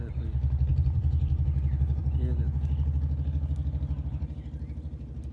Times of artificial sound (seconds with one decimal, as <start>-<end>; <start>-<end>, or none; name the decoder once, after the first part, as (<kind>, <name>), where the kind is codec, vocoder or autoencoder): 0.7-2.0 (vocoder, BigVGAN v2)